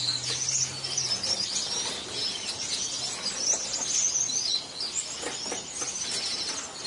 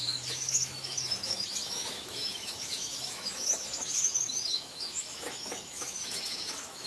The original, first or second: first